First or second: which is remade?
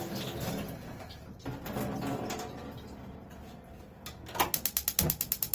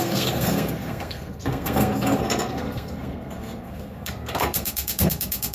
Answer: second